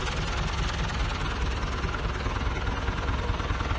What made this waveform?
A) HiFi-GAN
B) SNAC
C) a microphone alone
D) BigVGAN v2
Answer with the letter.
C